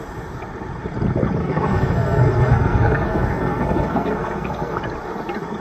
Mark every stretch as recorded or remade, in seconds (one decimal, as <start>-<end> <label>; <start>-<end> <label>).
0.0-1.4 recorded; 1.4-4.8 remade; 4.8-5.6 recorded

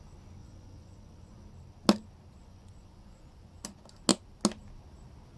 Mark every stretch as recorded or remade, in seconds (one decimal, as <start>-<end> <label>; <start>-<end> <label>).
0.0-0.4 recorded; 0.4-1.5 remade; 1.5-2.4 recorded; 2.4-3.6 remade; 3.6-5.4 recorded

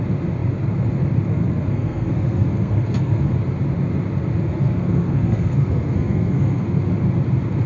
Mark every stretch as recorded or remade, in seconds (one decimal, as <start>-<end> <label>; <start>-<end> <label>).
0.0-1.3 recorded; 1.3-3.3 remade; 3.3-4.5 recorded; 4.5-6.7 remade; 6.7-7.7 recorded